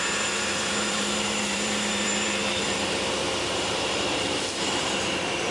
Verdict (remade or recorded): remade